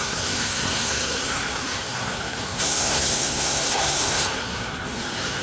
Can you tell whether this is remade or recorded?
remade